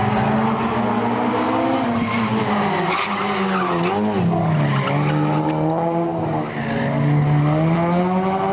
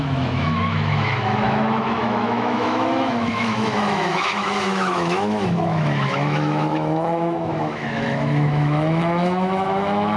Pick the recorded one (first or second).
first